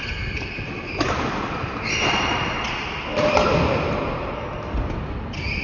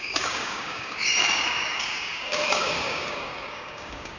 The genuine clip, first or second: first